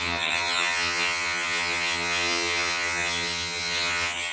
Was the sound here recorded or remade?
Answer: remade